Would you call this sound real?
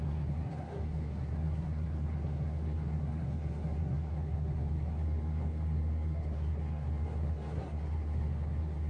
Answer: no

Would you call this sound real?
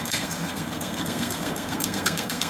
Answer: no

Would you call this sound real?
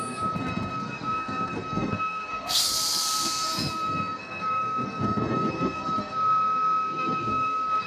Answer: no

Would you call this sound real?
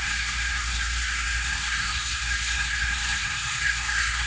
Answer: no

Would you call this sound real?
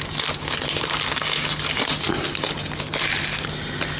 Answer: yes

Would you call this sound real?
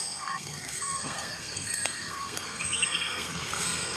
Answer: no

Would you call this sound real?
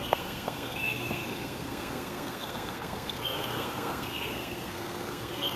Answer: no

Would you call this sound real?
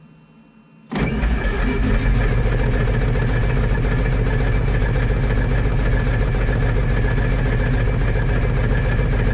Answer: yes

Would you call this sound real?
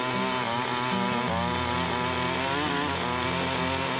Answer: yes